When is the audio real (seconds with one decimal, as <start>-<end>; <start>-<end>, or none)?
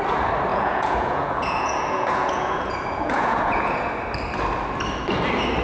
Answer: 0.0-0.5; 3.9-5.6